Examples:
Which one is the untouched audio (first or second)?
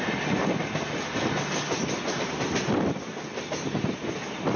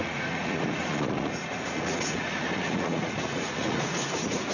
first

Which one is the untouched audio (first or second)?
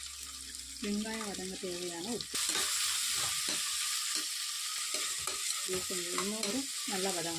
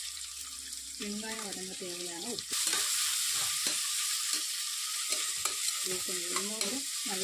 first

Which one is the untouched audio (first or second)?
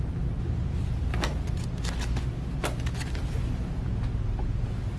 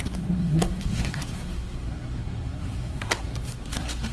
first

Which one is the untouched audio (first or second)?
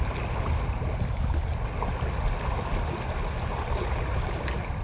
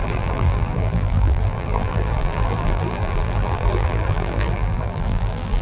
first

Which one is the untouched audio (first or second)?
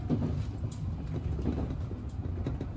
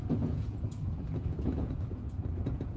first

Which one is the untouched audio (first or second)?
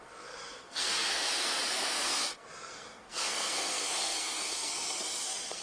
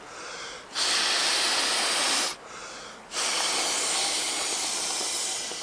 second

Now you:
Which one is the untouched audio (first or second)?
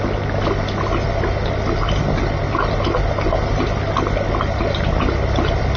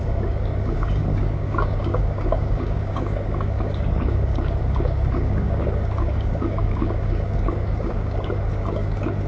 first